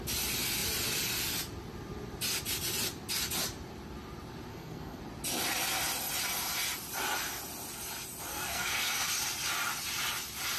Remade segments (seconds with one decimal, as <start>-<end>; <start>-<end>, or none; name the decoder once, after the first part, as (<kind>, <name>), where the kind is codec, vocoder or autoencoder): 4.5-5.0 (codec, SNAC); 8.3-9.1

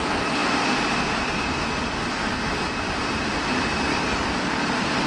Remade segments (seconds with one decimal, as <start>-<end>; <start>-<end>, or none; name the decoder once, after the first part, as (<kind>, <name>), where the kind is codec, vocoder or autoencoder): 3.9-4.6 (codec, DAC)

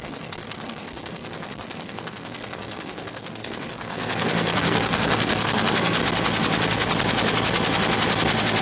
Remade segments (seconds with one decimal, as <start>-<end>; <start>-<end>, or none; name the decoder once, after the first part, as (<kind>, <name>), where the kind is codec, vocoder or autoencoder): 0.0-6.0 (codec, SNAC)

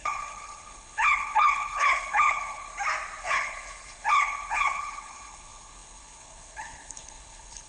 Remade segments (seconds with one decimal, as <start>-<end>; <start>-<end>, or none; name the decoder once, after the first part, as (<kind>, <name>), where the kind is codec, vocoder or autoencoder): 0.0-2.7 (codec, HILCodec); 3.2-7.7

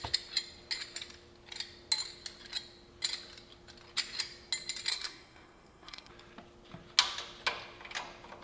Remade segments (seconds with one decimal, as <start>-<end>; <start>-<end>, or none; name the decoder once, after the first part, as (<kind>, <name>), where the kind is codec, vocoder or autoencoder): 4.9-6.1 (codec, SNAC)

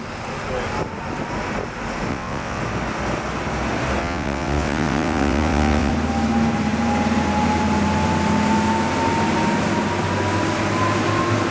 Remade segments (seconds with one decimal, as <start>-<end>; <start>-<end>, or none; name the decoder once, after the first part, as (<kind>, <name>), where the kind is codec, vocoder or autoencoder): 2.1-2.6 (vocoder, WaveNeXt); 4.0-5.9

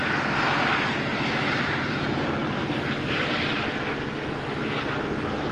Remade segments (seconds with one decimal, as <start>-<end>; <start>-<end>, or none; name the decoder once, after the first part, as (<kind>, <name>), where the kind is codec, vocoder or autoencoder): 1.1-2.0 (vocoder, BigVGAN v2); 2.4-3.4

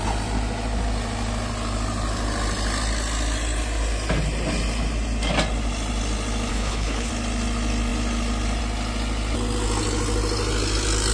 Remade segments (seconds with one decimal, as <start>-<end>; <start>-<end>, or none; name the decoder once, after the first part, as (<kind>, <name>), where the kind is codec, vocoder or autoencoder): 6.5-7.1 (codec, HILCodec)